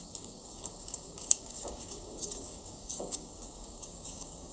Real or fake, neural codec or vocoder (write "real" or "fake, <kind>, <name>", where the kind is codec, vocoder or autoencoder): fake, codec, DAC